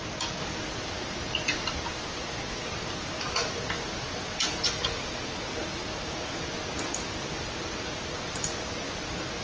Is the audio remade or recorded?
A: recorded